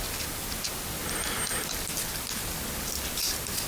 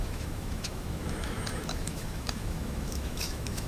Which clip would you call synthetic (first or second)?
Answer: second